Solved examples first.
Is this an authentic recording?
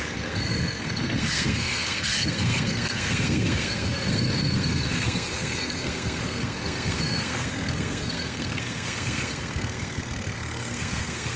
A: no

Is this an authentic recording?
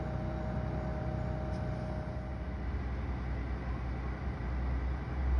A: yes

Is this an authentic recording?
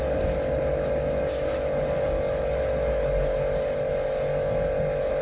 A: yes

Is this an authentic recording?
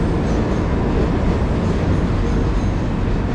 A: yes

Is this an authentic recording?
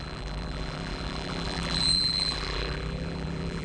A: no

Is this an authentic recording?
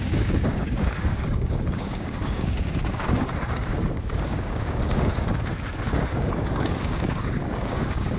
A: no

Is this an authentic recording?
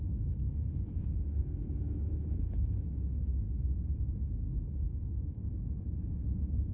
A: no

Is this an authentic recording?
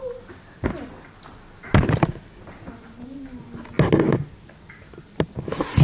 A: yes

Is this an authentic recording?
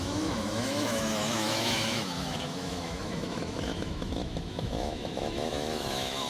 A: no